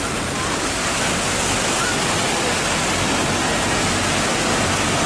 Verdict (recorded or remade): recorded